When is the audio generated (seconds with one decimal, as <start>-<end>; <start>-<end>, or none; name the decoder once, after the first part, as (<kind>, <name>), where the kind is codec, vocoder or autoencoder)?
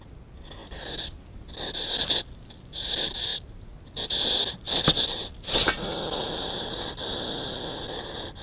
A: none